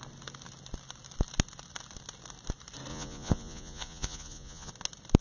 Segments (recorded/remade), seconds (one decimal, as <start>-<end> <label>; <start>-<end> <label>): 0.0-2.9 recorded; 2.9-4.7 remade; 4.7-5.2 recorded